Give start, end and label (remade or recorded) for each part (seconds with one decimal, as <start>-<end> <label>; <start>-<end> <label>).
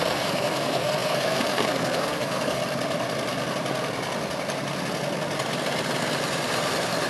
0.0-2.6 remade; 2.6-7.1 recorded